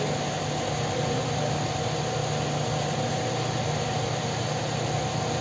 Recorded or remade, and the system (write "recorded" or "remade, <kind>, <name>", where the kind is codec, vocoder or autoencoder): recorded